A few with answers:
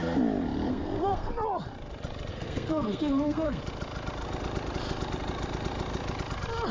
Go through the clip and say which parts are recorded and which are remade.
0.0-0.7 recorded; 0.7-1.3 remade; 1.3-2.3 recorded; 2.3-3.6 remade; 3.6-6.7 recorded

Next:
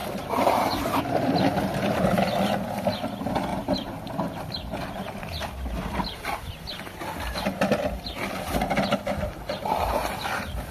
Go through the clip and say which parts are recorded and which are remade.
0.0-1.0 remade; 1.0-3.5 recorded; 3.5-4.5 remade; 4.5-10.7 recorded

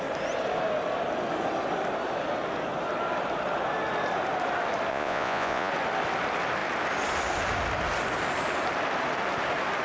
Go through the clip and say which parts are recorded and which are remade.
0.0-4.9 recorded; 4.9-5.7 remade; 5.7-9.8 recorded

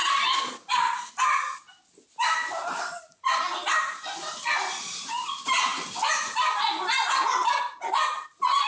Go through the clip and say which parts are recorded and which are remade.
0.0-8.7 recorded

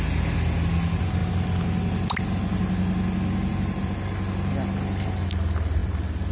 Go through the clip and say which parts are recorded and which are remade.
0.0-6.3 recorded

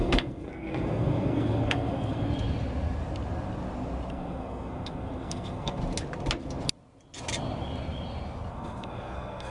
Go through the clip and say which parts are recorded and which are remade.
0.0-2.3 remade; 2.3-4.1 recorded; 4.1-5.8 remade; 5.8-8.5 recorded; 8.5-9.5 remade

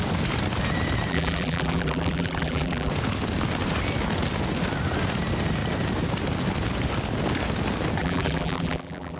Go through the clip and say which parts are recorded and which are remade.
0.0-1.1 recorded; 1.1-2.9 remade; 2.9-8.0 recorded; 8.0-9.2 remade

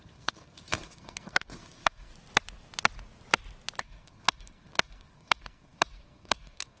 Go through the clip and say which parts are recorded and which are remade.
0.0-2.1 remade; 2.1-3.8 recorded; 3.8-6.8 remade